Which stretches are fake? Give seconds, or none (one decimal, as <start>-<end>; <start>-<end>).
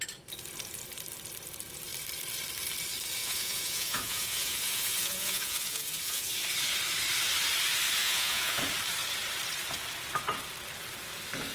3.2-6.3; 8.0-8.6